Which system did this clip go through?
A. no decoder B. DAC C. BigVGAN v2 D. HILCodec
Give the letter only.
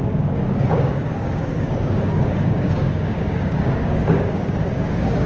B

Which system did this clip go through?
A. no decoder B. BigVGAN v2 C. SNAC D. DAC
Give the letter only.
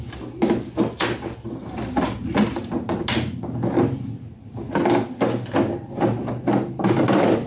A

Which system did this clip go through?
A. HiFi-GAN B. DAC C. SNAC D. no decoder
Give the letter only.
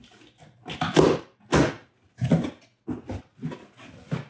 D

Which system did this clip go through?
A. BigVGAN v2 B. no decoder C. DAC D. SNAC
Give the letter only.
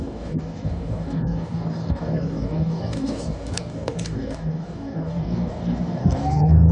C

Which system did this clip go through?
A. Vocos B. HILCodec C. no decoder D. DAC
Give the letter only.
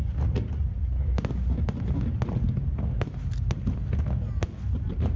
C